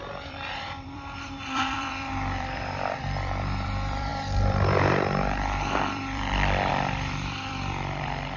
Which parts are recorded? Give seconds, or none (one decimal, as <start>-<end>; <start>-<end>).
none